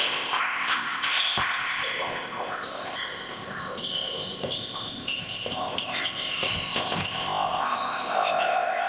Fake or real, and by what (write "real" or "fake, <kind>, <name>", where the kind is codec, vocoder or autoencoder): fake, codec, ZipCodec